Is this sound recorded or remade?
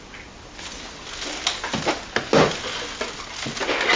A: recorded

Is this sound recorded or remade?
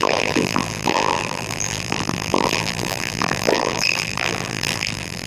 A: remade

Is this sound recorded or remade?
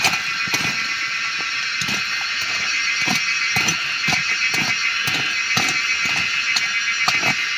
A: recorded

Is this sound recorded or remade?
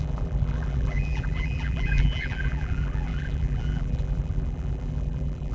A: remade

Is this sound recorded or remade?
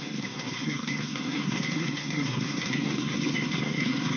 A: remade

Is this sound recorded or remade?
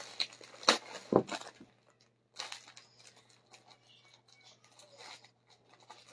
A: recorded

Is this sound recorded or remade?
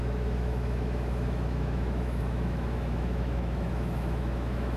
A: remade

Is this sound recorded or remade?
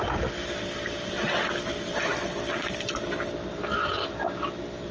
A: recorded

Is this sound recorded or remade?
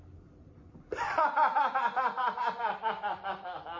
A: remade